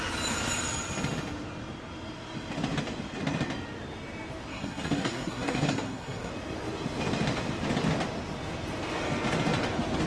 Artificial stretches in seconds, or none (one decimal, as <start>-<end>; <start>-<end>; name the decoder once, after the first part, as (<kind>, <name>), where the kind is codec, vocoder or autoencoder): 4.5-6.3 (codec, SNAC)